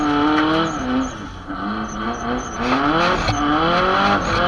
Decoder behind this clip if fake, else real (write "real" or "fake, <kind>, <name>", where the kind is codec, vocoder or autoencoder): real